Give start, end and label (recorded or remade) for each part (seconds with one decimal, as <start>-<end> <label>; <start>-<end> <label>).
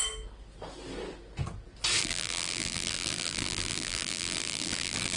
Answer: 0.0-2.0 recorded; 2.0-5.2 remade